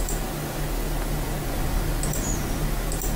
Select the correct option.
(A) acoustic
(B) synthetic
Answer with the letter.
A